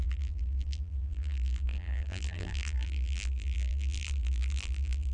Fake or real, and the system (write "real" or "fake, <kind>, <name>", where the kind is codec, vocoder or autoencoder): fake, vocoder, BigVGAN v2